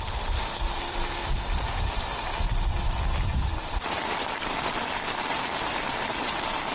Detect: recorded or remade remade